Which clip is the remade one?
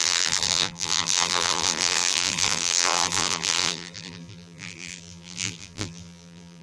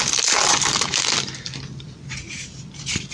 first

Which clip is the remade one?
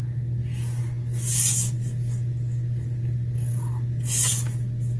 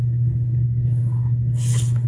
second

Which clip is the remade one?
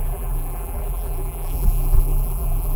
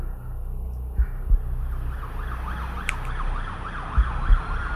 first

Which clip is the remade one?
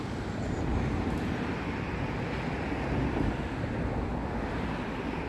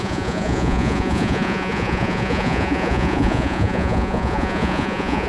second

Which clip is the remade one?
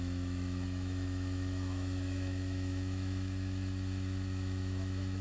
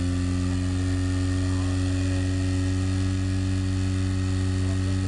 first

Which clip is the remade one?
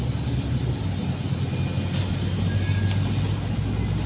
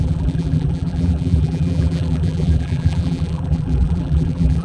second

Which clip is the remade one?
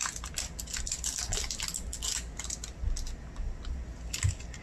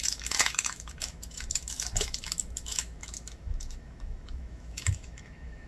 second